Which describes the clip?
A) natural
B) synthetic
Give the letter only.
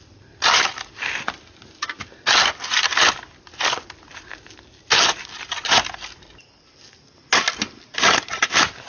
A